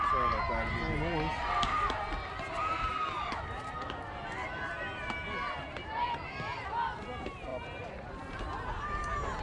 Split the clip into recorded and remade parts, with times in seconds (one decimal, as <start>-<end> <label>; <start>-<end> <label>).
0.0-9.4 recorded

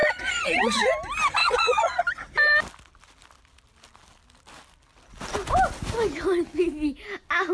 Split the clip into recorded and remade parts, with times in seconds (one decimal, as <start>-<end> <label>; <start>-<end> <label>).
0.0-0.9 remade; 0.9-1.4 recorded; 1.4-2.0 remade; 2.0-7.5 recorded

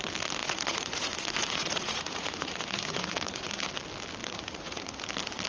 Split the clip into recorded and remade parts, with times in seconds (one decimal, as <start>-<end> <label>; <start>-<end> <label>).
0.0-0.4 recorded; 0.4-3.7 remade; 3.7-4.2 recorded; 4.2-5.0 remade; 5.0-5.5 recorded

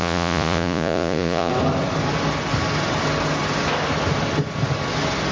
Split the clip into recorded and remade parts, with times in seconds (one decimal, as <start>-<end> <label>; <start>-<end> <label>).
0.0-1.5 remade; 1.5-5.3 recorded

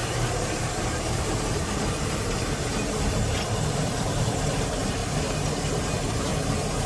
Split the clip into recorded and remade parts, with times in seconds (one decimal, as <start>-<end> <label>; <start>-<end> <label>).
0.0-5.0 remade; 5.0-5.7 recorded; 5.7-6.3 remade; 6.3-6.9 recorded